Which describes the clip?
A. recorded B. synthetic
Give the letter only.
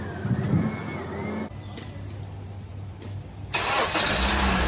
A